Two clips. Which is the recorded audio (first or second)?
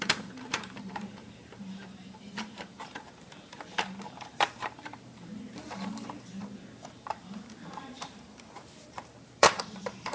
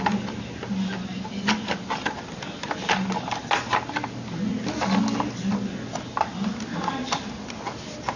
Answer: second